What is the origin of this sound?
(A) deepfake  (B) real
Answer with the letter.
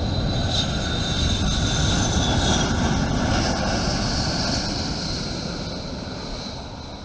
B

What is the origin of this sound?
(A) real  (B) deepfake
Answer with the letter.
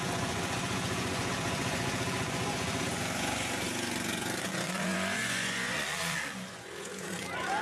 B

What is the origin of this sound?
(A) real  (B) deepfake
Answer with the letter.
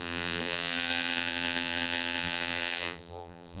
B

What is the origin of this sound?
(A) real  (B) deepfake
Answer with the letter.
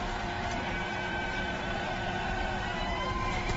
B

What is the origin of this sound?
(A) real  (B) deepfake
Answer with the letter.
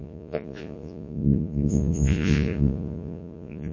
B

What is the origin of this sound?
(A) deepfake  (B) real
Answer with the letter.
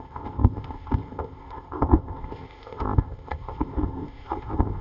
A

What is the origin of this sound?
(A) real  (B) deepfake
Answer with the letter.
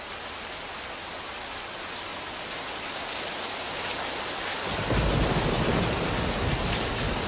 A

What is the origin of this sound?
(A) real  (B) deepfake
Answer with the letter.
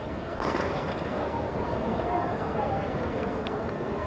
B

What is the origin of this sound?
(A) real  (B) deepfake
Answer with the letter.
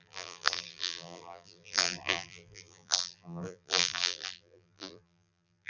B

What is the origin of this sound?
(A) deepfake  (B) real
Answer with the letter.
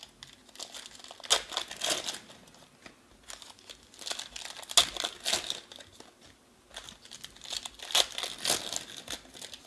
B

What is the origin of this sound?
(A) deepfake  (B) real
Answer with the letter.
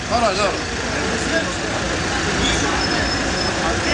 B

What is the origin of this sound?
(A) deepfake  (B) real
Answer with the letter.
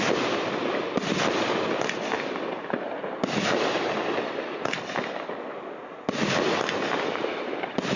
B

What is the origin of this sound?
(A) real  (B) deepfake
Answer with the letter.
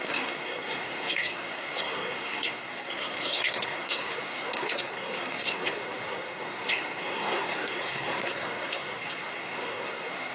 B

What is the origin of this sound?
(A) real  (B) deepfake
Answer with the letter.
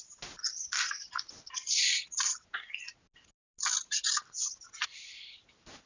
A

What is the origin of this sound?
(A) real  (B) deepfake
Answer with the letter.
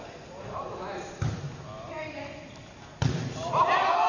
B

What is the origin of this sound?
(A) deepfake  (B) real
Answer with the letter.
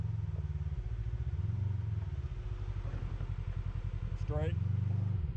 B